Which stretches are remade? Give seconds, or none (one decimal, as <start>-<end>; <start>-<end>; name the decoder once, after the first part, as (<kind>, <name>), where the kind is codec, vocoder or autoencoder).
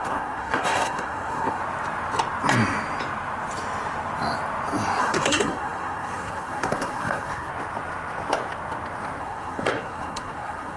0.0-1.6 (codec, SNAC); 5.0-7.5; 9.2-10.8